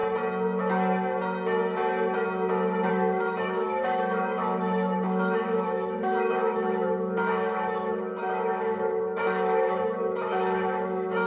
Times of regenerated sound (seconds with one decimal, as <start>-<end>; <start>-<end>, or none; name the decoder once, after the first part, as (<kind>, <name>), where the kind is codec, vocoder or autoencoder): 2.9-11.3 (autoencoder, DAC-VAE)